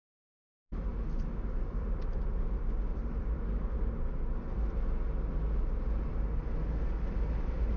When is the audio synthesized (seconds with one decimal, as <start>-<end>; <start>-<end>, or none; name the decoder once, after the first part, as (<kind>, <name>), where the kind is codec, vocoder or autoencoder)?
0.9-3.6 (vocoder, BigVGAN v2)